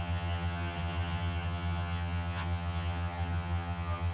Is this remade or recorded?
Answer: remade